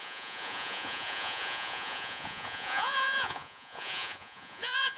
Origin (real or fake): fake